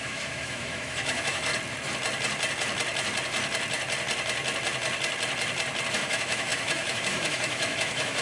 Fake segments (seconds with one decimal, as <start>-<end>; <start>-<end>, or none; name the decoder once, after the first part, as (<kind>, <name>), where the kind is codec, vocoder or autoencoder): 0.0-1.5 (autoencoder, DAC-VAE); 5.9-8.2